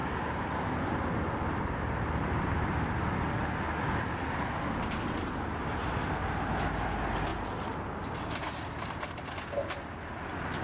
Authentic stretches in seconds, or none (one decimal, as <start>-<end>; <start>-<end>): 0.0-10.6